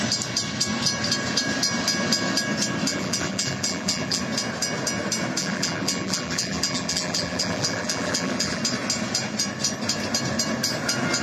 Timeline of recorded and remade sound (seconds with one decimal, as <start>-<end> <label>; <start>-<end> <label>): 0.0-2.9 recorded; 2.9-4.2 remade; 4.2-5.4 recorded; 5.4-8.6 remade; 8.6-11.2 recorded